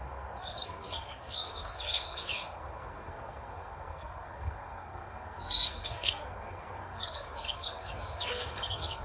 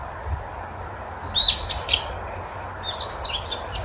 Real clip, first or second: second